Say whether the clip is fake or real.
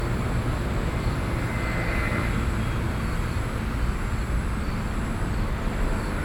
real